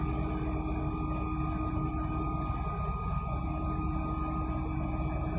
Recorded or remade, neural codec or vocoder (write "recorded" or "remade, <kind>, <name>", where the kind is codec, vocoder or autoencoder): recorded